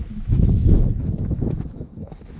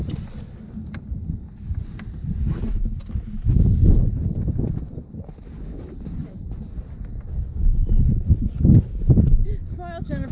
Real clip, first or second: second